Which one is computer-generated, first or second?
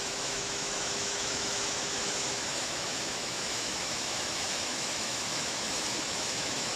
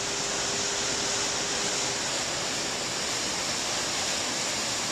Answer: first